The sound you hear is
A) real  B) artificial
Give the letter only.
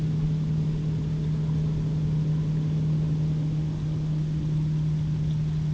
A